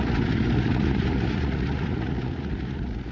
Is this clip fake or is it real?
fake